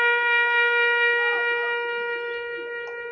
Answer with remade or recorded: recorded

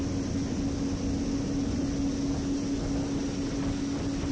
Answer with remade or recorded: recorded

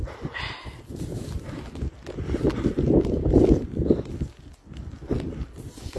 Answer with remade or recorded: recorded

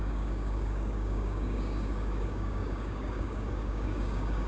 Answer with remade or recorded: remade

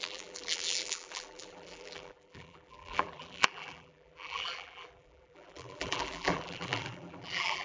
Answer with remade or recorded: remade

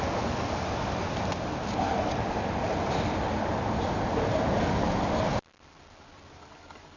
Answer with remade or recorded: recorded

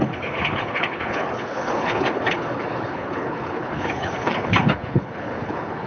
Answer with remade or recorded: remade